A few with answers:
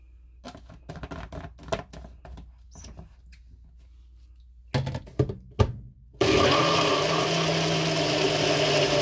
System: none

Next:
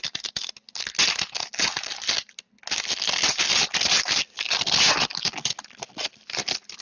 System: none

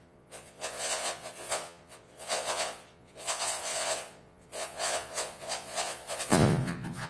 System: vocoder, Vocos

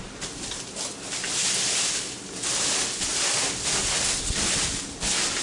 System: none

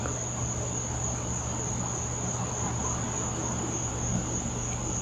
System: none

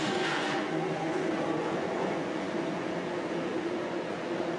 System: vocoder, Vocos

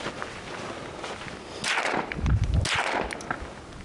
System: none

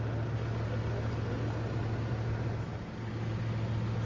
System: none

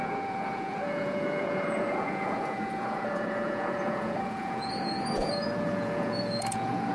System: vocoder, Vocos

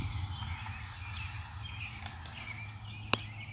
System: none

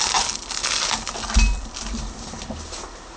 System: none